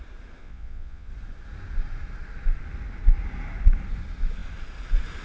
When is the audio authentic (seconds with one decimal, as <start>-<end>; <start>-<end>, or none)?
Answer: 0.0-0.4; 1.1-5.2